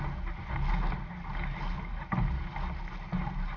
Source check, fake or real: real